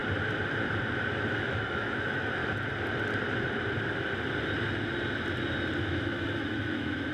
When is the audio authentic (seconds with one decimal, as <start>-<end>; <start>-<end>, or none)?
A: 0.0-1.3; 2.4-5.8